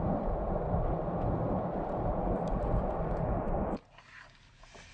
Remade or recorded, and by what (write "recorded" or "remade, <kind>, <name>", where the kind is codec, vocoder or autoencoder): recorded